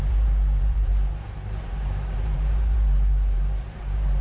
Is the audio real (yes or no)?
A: no